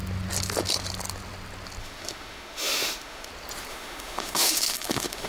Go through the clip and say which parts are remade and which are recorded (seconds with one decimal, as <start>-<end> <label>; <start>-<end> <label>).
0.0-1.8 recorded; 1.8-3.3 remade; 3.3-3.7 recorded; 3.7-5.3 remade